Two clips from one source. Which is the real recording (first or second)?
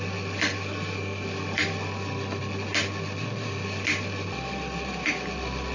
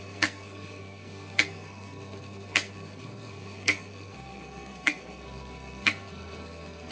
first